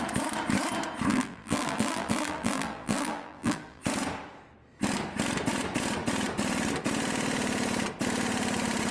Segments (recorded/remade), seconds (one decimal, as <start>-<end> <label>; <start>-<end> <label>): 0.0-1.1 recorded; 1.1-3.8 remade; 3.8-8.9 recorded